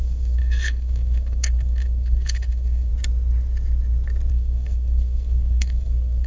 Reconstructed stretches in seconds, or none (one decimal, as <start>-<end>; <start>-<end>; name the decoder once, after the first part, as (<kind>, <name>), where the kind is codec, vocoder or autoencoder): 0.0-2.9 (codec, SNAC); 4.3-6.3